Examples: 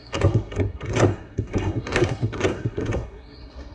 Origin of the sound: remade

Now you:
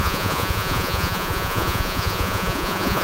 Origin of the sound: remade